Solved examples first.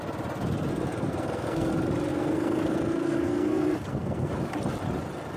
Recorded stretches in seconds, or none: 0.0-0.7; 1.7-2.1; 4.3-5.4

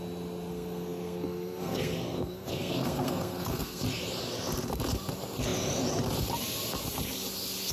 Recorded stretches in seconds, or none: 0.0-0.5; 3.8-7.7

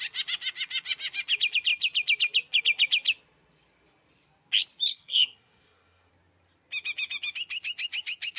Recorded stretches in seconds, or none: 0.0-4.9; 6.1-8.4

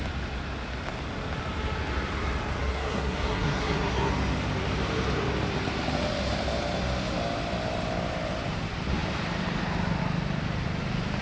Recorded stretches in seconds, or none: 0.0-2.6; 4.1-11.2